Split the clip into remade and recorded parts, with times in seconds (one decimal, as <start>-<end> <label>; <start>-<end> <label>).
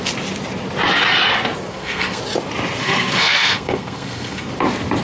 0.0-1.7 recorded; 1.7-2.2 remade; 2.2-2.8 recorded; 2.8-4.5 remade; 4.5-5.0 recorded